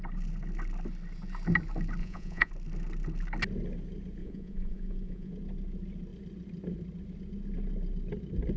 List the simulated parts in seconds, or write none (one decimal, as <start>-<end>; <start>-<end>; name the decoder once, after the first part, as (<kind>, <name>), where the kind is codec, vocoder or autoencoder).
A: 2.0-2.5 (vocoder, Vocos); 4.2-5.3